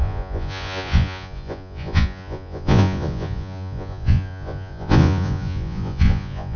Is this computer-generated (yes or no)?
yes